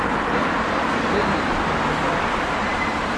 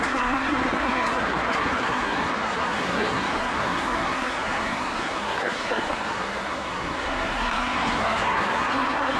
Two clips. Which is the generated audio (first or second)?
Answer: second